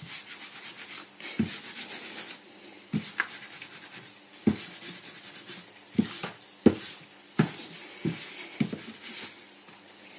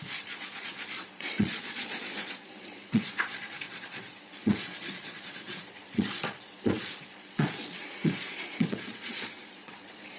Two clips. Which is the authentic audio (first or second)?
first